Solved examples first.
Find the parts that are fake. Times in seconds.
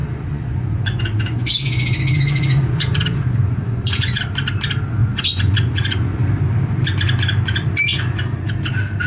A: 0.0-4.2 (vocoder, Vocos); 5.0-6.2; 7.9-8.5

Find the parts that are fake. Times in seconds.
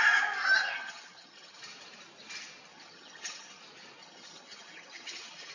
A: 0.6-1.6 (vocoder, HiFi-GAN); 2.7-3.6; 4.0-5.5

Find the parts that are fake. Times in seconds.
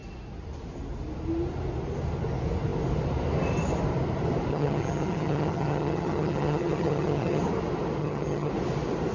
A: 4.5-7.4 (vocoder, HiFi-GAN); 8.0-8.5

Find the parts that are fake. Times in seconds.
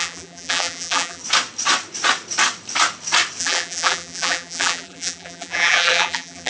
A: 0.0-1.2 (vocoder, BigVGAN v2); 3.4-6.5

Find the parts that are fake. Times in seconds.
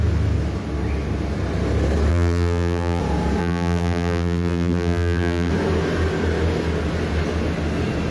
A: 2.1-3.0 (vocoder, BigVGAN v2); 3.4-5.5